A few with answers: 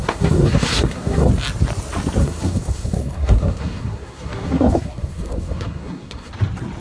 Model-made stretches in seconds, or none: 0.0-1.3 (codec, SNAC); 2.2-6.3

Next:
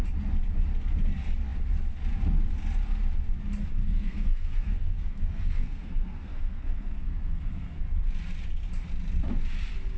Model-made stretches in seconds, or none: 3.8-7.8 (codec, SNAC)

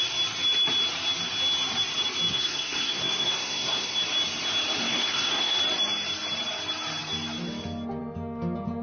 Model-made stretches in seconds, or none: 2.3-4.0 (codec, SNAC); 4.8-5.6

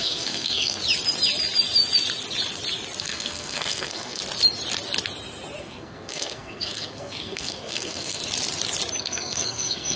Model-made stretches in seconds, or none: 0.0-0.8 (codec, SNAC); 3.0-4.2; 5.6-8.2; 9.0-10.0